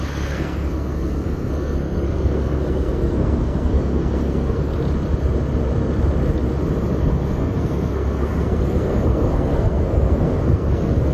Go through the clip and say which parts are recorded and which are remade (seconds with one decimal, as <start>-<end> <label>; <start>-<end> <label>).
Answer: 0.0-4.7 remade; 4.7-7.1 recorded; 7.1-11.1 remade